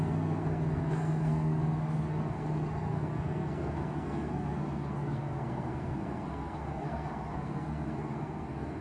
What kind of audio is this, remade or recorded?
remade